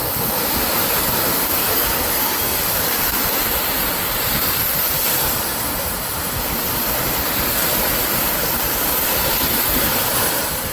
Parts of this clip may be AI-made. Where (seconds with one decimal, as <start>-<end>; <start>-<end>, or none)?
1.6-2.6